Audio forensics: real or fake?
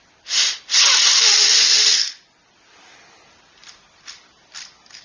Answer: real